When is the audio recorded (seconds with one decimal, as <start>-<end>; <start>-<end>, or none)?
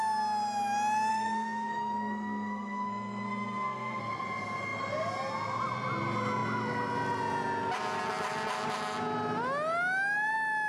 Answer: 0.0-1.1; 4.0-10.7